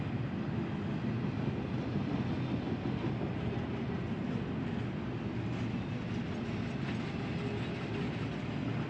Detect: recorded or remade recorded